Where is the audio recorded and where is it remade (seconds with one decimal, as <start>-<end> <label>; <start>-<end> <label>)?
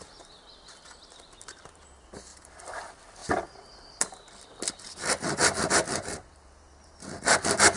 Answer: 0.0-7.8 recorded